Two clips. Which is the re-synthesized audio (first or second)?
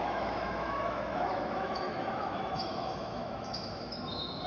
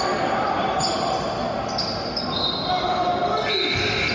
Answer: first